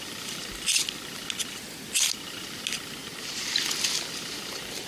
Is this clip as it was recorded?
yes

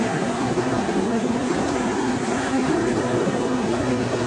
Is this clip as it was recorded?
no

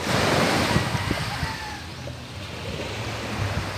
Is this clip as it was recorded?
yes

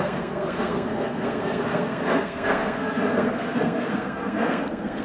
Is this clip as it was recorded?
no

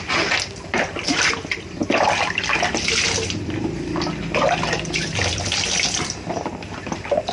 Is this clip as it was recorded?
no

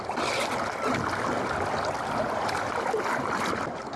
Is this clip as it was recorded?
yes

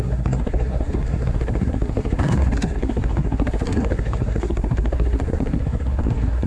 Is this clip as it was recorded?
no